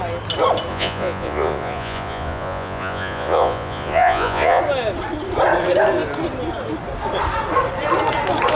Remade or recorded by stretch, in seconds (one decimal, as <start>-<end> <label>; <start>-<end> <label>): 0.0-0.7 recorded; 0.7-4.6 remade; 4.6-8.5 recorded